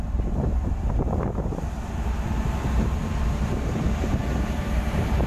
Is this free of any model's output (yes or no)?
no